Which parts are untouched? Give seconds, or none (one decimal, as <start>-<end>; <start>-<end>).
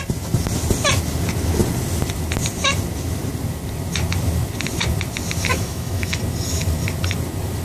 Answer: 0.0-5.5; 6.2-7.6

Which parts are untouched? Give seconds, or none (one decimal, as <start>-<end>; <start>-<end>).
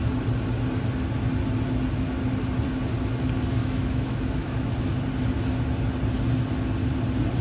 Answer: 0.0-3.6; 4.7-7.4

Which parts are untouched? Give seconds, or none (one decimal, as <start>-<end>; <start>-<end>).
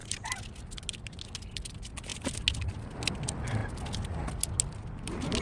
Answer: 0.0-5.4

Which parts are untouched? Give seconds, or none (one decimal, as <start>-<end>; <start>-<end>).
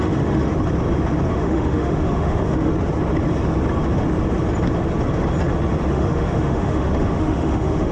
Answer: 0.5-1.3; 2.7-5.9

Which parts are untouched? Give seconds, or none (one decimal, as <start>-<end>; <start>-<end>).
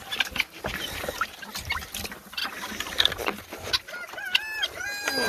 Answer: 0.0-5.3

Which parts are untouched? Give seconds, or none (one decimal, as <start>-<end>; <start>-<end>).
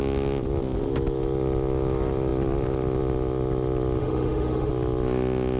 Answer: 0.0-4.0; 4.7-5.6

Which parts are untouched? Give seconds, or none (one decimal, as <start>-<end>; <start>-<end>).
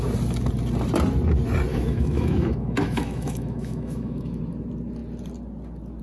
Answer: 0.0-1.7; 4.4-6.0